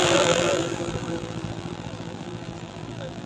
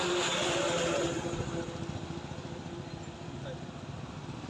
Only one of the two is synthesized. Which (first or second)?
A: first